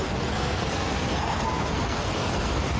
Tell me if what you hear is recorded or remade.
remade